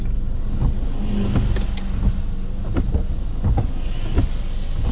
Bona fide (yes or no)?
yes